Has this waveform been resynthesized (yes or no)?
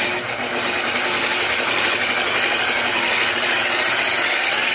no